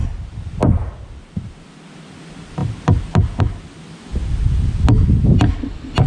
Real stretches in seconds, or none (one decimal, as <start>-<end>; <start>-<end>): 0.0-6.1